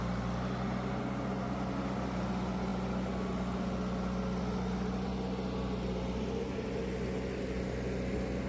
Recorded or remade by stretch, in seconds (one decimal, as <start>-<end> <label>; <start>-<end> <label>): 0.0-8.5 recorded